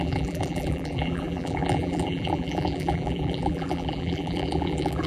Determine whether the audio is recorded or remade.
remade